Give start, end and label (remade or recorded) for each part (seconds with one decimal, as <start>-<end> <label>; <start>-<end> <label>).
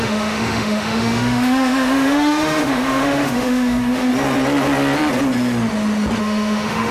0.0-4.1 remade; 4.1-6.2 recorded; 6.2-6.9 remade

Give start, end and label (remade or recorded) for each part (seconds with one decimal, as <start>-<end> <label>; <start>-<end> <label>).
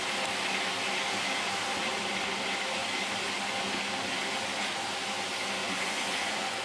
0.0-5.6 recorded; 5.6-6.6 remade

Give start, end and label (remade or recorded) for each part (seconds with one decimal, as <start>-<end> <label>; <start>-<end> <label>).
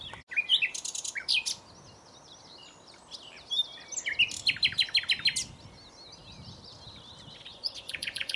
0.0-7.5 recorded; 7.5-8.4 remade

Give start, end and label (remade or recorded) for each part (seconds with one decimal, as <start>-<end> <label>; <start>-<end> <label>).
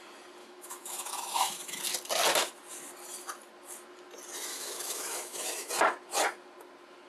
0.0-0.4 recorded; 0.4-1.8 remade; 1.8-4.5 recorded; 4.5-5.7 remade; 5.7-7.1 recorded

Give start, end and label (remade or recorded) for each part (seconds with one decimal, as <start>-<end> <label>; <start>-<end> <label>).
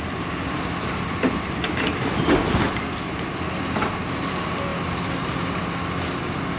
0.0-6.6 recorded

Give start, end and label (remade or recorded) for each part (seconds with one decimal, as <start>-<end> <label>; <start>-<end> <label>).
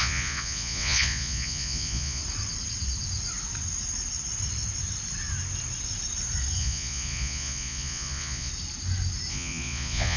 0.0-2.2 remade; 2.2-6.6 recorded; 6.6-8.5 remade; 8.5-9.3 recorded; 9.3-10.2 remade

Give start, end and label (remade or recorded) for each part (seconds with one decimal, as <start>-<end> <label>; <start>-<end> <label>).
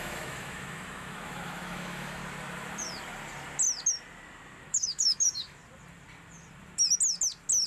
0.0-2.2 remade; 2.2-4.6 recorded; 4.6-5.6 remade; 5.6-7.7 recorded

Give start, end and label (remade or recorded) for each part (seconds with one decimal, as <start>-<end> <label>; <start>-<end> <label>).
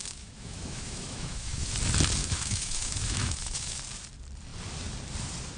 0.0-1.7 remade; 1.7-2.2 recorded; 2.2-3.8 remade; 3.8-5.6 recorded